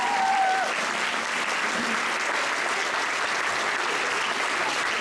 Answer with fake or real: real